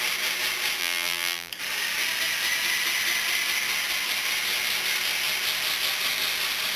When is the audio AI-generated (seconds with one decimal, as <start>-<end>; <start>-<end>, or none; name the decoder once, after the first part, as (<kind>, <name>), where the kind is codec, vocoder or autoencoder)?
0.8-1.5 (vocoder, BigVGAN v2)